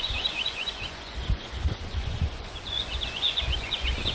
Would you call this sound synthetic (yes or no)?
yes